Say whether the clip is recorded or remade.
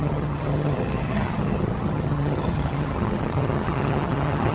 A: remade